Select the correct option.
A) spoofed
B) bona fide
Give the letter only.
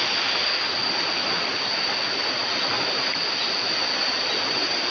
B